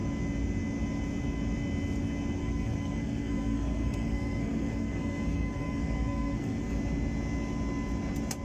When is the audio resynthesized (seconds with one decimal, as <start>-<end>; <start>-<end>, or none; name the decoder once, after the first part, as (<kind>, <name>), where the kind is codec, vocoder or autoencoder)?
2.4-6.8 (codec, SNAC)